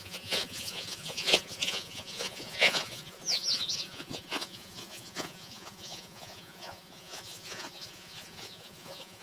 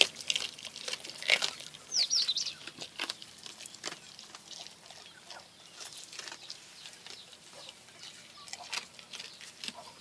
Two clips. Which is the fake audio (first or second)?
first